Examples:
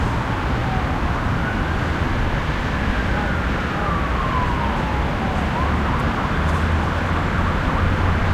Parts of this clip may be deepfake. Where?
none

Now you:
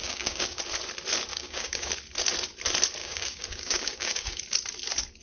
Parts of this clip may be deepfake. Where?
0.0-0.6; 1.3-1.9; 3.0-4.4

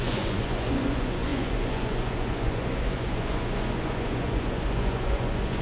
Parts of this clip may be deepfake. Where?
0.0-5.6

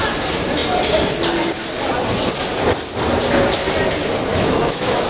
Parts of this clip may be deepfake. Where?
4.3-5.1